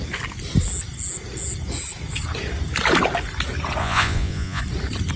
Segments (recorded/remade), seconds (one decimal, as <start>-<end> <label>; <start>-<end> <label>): 0.0-3.8 recorded; 3.8-4.6 remade; 4.6-5.2 recorded